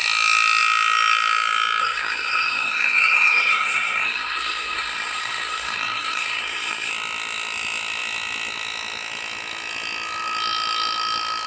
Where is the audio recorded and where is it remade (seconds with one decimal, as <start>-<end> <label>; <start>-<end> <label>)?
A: 0.0-1.8 recorded; 1.8-6.9 remade; 6.9-11.5 recorded